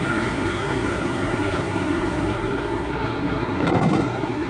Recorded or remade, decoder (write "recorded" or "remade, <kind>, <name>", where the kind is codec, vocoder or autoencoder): remade, codec, SNAC